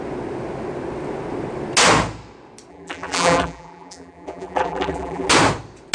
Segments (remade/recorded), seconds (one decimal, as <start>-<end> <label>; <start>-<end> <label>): 0.0-2.7 recorded; 2.7-5.3 remade; 5.3-5.9 recorded